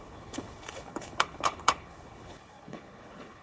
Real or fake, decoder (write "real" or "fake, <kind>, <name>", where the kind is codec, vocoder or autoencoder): fake, codec, HILCodec